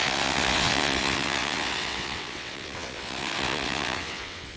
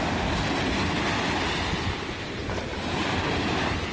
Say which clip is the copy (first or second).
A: first